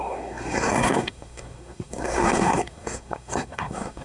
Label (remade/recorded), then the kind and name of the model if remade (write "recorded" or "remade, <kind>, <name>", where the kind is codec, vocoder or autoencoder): remade, codec, SNAC